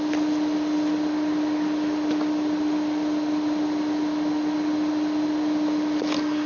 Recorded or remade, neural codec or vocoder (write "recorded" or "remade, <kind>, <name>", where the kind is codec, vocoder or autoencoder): recorded